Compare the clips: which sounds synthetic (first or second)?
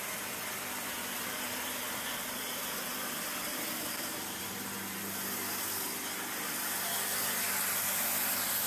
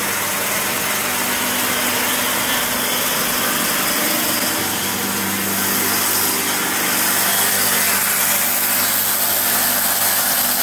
first